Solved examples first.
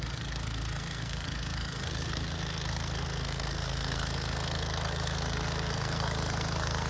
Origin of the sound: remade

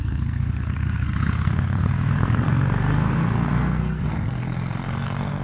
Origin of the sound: remade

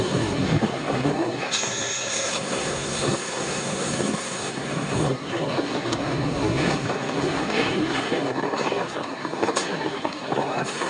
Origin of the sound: remade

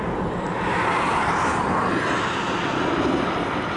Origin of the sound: recorded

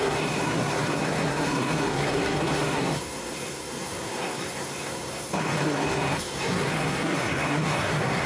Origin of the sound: remade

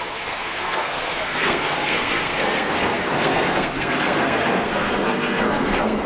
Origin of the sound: remade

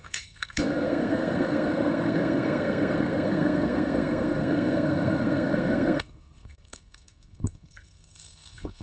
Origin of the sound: remade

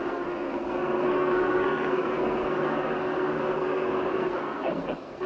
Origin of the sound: remade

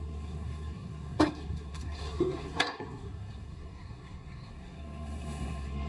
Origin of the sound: remade